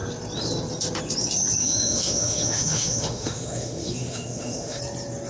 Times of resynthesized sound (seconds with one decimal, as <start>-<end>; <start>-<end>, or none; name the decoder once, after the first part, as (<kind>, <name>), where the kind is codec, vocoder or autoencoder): 1.6-4.8 (autoencoder, DAC-VAE)